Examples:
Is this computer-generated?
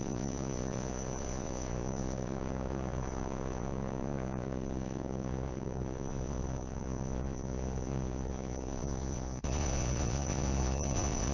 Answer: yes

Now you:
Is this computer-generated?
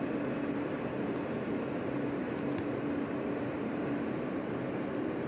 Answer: no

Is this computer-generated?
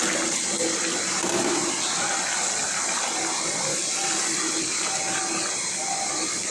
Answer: no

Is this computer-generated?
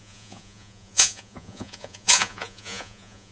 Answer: yes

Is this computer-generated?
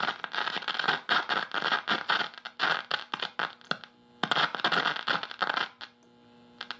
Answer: no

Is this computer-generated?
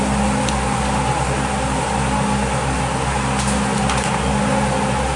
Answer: no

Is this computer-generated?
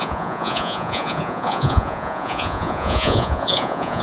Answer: yes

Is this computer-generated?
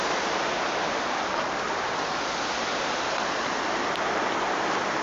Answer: no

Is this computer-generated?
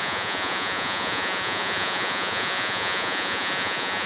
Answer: yes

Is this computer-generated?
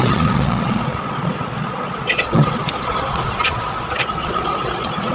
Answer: yes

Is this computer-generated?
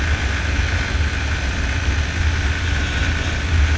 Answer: no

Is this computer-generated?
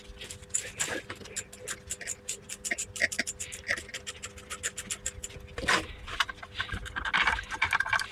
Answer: no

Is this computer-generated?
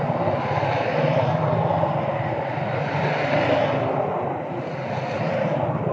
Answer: no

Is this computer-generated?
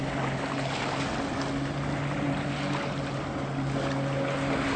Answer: no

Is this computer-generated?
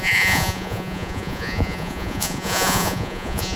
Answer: yes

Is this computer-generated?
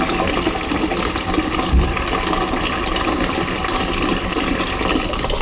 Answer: no